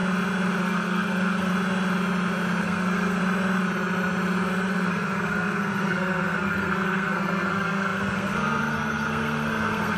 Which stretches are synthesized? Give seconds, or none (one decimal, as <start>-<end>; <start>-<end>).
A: 0.6-1.5; 2.6-3.2; 4.7-10.0

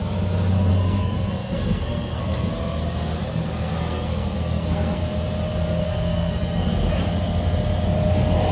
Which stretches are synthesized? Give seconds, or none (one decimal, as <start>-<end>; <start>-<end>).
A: 0.7-2.5; 3.2-5.0; 5.8-6.7

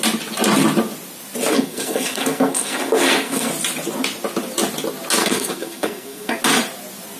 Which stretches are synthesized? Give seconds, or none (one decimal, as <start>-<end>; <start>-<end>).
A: 1.5-3.5; 5.2-6.4

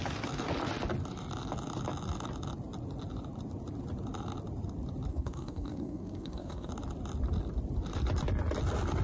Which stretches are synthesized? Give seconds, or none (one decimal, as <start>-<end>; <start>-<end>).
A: 5.1-6.7

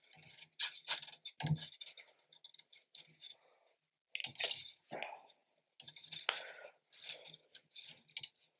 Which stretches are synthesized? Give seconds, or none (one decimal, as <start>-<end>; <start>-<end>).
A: none

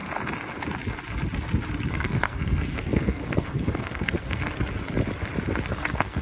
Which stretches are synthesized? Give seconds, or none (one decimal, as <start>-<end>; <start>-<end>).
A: 1.9-4.4; 5.7-6.2

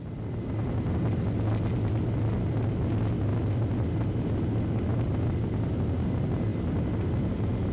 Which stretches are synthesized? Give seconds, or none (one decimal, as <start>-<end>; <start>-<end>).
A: none